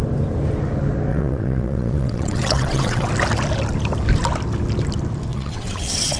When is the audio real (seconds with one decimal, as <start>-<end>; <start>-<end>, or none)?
0.0-1.1; 3.1-5.3